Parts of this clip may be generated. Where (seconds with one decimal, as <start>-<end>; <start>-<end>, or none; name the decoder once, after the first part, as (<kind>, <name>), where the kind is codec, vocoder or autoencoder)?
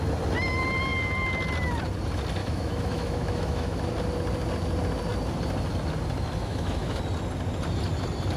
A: 2.4-3.8 (autoencoder, DAC-VAE); 6.4-7.0